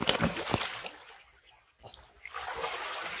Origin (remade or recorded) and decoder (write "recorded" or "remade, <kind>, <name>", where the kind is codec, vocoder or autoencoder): recorded